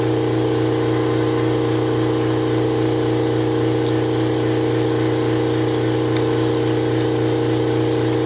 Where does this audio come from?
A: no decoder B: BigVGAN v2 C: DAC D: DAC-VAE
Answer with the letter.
A